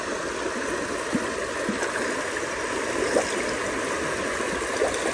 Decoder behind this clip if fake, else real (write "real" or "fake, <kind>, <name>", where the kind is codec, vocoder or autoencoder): real